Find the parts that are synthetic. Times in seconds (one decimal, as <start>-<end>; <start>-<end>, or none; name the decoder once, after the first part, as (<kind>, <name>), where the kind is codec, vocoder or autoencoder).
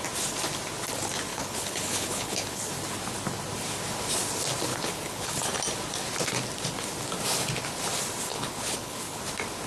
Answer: 1.3-2.7 (codec, HILCodec); 4.7-5.3; 8.3-9.2